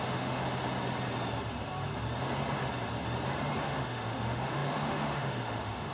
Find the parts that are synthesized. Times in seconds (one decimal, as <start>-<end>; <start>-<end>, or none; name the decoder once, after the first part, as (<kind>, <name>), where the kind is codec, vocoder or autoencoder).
0.0-0.4 (autoencoder, DAC-VAE); 3.6-5.9